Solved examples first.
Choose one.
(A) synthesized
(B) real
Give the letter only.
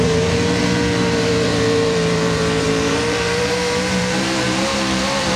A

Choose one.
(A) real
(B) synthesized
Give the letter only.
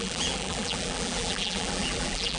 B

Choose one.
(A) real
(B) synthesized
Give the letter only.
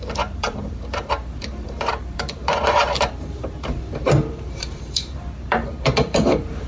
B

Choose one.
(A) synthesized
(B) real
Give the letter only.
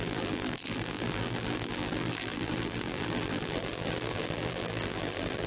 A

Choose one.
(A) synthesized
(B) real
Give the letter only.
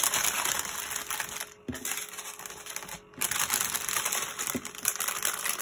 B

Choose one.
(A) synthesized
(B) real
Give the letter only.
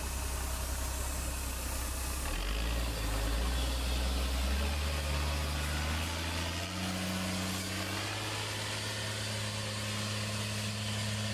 B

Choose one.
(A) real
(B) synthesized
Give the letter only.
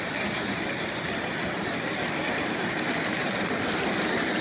A